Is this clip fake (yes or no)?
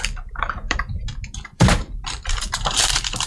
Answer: yes